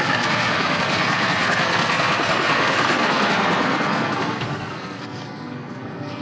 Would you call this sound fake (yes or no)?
yes